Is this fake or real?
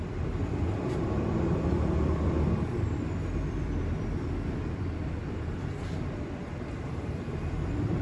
fake